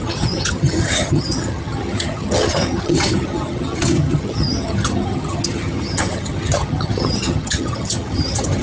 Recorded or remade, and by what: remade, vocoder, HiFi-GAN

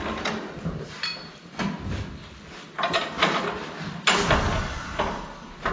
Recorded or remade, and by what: recorded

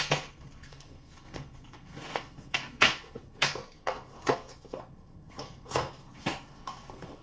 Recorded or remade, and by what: remade, codec, SNAC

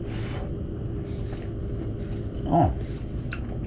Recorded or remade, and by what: recorded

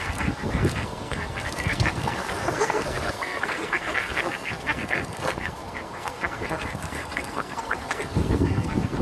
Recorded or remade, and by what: remade, codec, SNAC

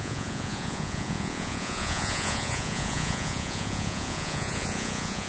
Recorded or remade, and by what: remade, vocoder, Vocos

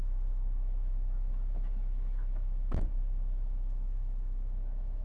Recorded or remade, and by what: remade, autoencoder, DAC-VAE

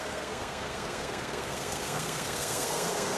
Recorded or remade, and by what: remade, codec, SNAC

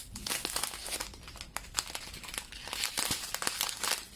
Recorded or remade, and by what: recorded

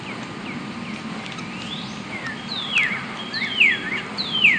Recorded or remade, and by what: recorded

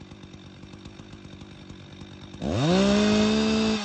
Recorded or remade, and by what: recorded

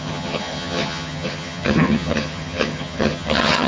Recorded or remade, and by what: remade, vocoder, HiFi-GAN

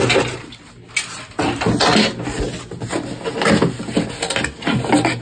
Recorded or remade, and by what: recorded